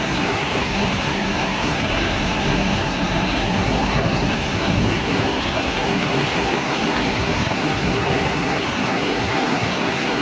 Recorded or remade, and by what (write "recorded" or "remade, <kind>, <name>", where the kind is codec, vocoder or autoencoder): remade, codec, SNAC